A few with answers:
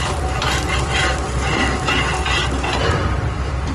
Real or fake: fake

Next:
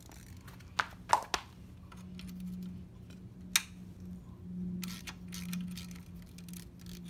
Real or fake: real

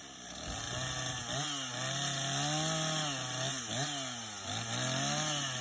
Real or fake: real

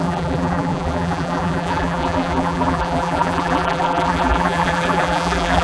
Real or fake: fake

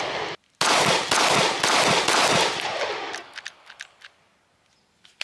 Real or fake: real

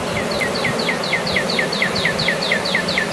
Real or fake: fake